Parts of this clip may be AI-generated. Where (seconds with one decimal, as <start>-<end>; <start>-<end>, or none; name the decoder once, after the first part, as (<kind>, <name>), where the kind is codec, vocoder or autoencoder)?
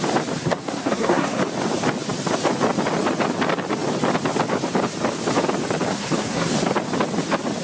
0.4-1.4 (codec, SNAC); 5.9-6.5